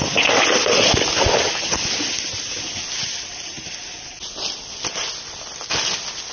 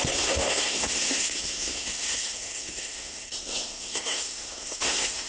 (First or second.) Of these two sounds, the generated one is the second